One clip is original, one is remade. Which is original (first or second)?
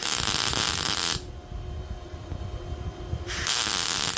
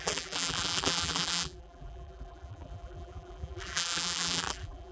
first